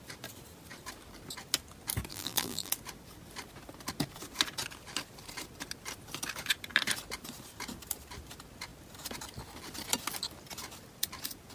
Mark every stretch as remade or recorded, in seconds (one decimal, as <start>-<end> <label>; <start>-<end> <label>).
0.0-2.1 recorded; 2.1-2.7 remade; 2.7-11.5 recorded